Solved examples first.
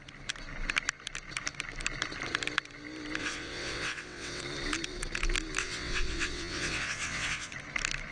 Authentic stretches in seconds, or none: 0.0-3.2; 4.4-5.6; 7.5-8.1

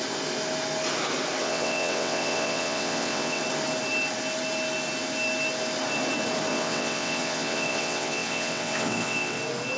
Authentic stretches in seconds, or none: 0.0-1.4; 3.4-6.5; 9.4-9.8

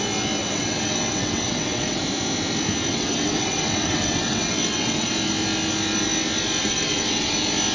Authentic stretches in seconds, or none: 0.0-0.4; 2.0-2.9; 5.1-6.6; 7.3-7.7

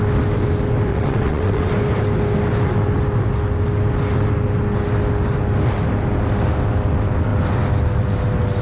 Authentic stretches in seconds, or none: 0.0-0.9; 1.7-8.6